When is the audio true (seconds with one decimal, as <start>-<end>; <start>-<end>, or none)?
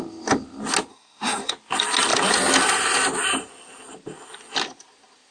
0.0-0.9; 1.5-5.3